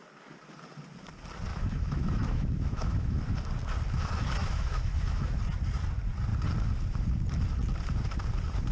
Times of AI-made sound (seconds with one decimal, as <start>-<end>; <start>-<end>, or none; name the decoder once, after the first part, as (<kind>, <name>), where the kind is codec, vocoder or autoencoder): 1.5-3.2 (autoencoder, DAC-VAE); 4.4-5.4